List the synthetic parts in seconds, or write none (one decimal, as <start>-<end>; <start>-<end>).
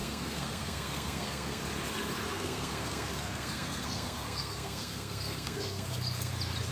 0.0-1.6; 2.3-6.3